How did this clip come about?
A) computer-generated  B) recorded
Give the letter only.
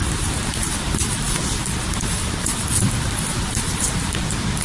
A